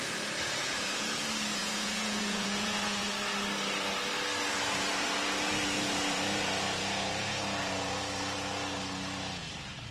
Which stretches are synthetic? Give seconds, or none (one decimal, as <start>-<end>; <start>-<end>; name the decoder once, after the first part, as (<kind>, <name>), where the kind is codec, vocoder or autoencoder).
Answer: 0.6-1.2 (vocoder, Vocos); 1.6-3.1